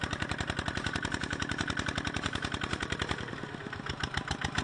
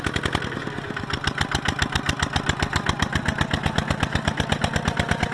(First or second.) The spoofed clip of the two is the first